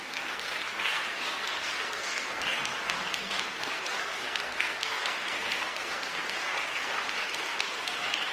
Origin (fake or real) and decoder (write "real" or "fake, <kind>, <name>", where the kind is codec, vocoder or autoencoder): fake, codec, SNAC